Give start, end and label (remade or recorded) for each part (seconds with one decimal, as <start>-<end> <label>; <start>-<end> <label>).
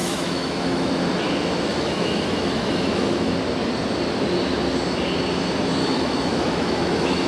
0.0-0.9 remade; 0.9-1.7 recorded; 1.7-3.3 remade; 3.3-5.8 recorded; 5.8-7.3 remade